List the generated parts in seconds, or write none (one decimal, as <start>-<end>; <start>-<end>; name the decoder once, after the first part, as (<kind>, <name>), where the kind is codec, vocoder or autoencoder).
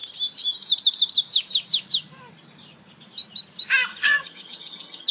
3.9-5.1 (vocoder, HiFi-GAN)